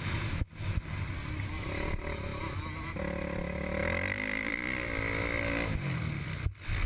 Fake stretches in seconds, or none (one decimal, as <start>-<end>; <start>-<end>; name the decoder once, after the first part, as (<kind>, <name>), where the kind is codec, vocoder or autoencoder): none